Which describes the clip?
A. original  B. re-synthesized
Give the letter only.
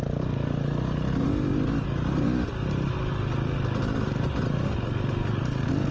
A